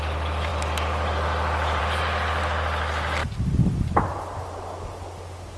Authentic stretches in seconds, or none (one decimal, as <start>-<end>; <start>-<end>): 0.0-5.6